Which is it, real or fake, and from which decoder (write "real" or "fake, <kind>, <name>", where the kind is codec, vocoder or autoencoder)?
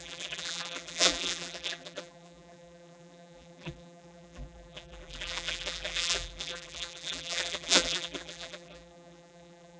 fake, vocoder, BigVGAN v2